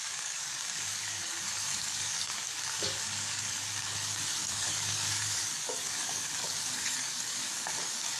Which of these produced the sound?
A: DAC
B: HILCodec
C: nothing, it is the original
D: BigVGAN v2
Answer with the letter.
A